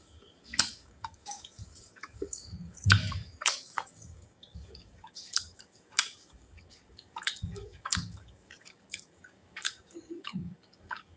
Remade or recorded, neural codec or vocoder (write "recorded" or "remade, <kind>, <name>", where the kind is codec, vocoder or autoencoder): remade, codec, DAC